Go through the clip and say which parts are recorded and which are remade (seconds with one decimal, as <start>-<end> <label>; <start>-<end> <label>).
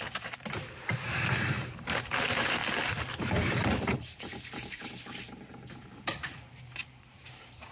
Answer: 0.0-2.6 remade; 2.6-3.6 recorded; 3.6-7.7 remade